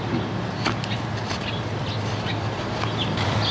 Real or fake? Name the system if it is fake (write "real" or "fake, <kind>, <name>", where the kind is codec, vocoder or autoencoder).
real